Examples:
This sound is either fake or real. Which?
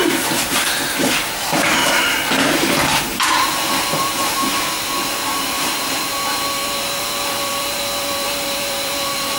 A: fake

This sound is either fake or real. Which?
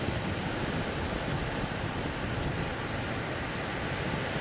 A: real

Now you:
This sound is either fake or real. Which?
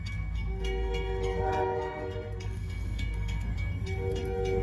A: fake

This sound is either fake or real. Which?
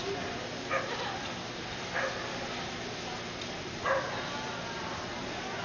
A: real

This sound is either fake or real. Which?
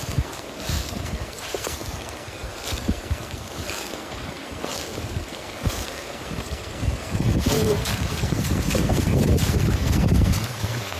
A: fake